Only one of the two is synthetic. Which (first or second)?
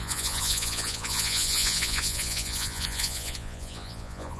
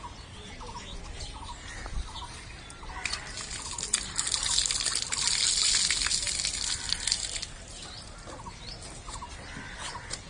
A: first